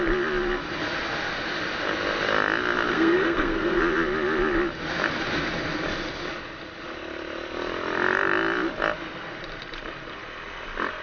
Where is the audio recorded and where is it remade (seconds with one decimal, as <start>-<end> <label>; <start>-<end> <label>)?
0.0-2.9 recorded; 2.9-3.8 remade; 3.8-11.0 recorded